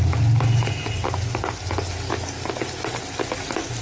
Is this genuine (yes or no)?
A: yes